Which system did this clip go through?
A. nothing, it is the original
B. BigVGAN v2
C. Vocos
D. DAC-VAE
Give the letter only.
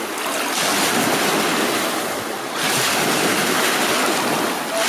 A